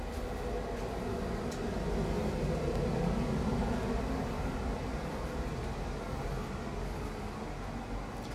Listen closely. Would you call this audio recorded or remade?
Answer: recorded